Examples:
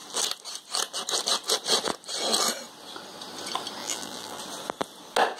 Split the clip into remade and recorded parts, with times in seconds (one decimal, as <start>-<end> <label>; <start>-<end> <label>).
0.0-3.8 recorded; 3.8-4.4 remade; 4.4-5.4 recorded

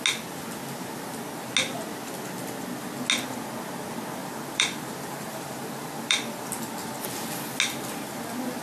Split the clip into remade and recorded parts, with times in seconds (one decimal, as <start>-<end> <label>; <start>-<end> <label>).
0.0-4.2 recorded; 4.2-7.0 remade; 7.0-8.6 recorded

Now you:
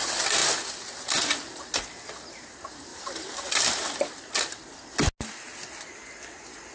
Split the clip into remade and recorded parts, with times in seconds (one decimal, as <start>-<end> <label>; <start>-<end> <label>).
0.0-2.9 recorded; 2.9-4.2 remade; 4.2-6.7 recorded

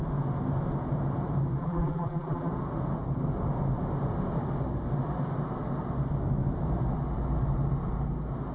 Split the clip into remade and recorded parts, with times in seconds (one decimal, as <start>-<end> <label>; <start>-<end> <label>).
0.0-1.6 recorded; 1.6-2.5 remade; 2.5-8.5 recorded

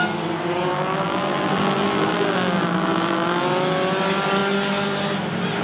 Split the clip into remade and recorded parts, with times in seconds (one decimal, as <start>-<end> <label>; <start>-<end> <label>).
0.0-0.7 recorded; 0.7-3.4 remade; 3.4-5.6 recorded

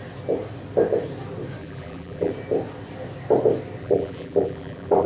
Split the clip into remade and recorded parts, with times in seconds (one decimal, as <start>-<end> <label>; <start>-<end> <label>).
0.0-1.6 recorded; 1.6-2.3 remade; 2.3-3.8 recorded; 3.8-5.1 remade